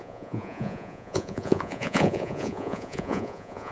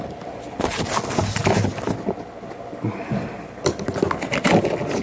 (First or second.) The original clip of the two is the second